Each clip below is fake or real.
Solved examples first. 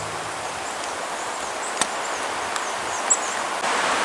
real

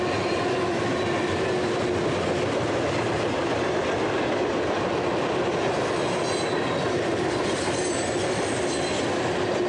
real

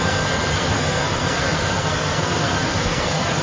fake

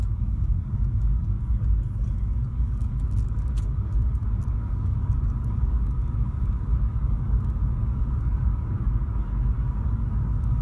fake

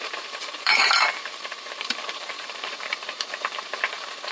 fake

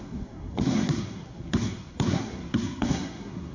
fake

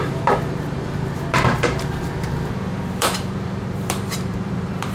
fake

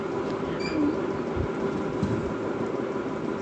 real